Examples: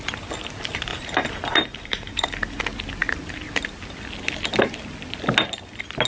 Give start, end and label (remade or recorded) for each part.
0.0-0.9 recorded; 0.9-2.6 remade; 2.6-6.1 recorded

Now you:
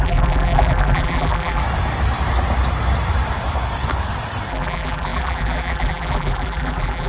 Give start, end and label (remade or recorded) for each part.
0.0-1.6 remade; 1.6-4.5 recorded; 4.5-7.1 remade

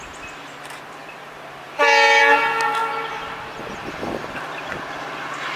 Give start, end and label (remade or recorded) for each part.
0.0-5.6 recorded

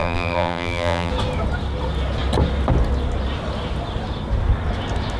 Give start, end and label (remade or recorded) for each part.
0.0-1.1 remade; 1.1-5.2 recorded

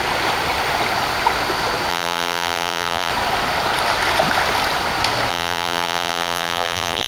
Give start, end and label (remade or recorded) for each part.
0.0-1.9 recorded; 1.9-3.1 remade; 3.1-5.3 recorded; 5.3-7.1 remade

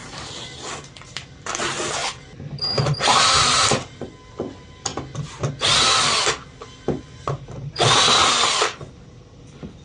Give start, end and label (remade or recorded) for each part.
0.0-4.9 remade; 4.9-6.2 recorded; 6.2-6.7 remade; 6.7-7.7 recorded; 7.7-9.8 remade

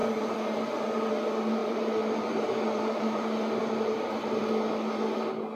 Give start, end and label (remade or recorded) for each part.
0.0-1.1 remade; 1.1-1.6 recorded; 1.6-4.4 remade; 4.4-5.6 recorded